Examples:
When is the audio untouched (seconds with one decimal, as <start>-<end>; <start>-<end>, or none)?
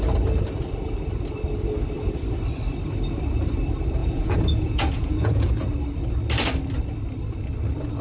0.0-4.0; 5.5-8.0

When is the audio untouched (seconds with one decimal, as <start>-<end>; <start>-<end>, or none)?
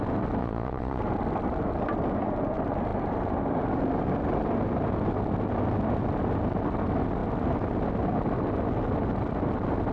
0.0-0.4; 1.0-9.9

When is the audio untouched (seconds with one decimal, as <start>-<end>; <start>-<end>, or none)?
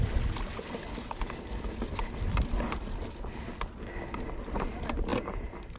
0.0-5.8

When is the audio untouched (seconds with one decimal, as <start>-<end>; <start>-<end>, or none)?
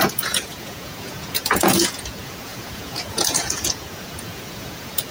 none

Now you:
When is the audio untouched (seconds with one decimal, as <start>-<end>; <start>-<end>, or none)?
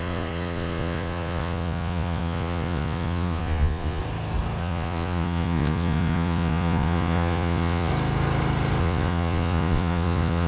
4.0-4.6; 7.9-8.8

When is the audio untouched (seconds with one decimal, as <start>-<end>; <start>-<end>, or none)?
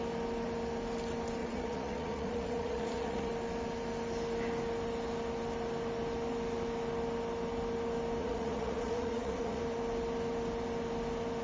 0.0-1.4; 3.3-8.2; 9.6-11.4